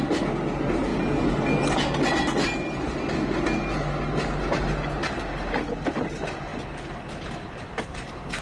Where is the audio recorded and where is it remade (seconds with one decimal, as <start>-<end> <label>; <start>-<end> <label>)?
0.0-8.4 recorded